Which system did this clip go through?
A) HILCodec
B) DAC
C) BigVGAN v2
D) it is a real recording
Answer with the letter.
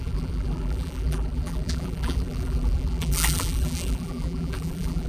C